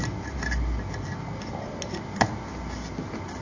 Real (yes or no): yes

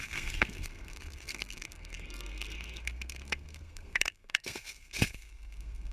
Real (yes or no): no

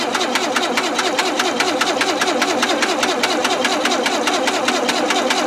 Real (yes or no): yes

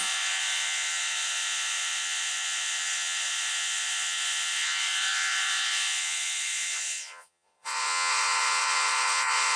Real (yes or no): no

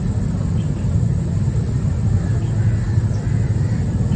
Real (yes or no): yes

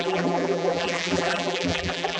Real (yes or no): no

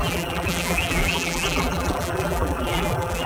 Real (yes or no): no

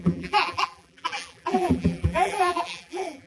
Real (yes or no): no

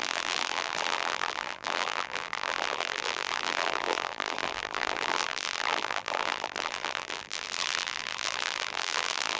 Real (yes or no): no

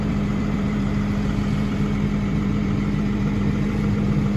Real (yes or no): no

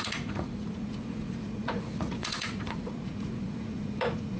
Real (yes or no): no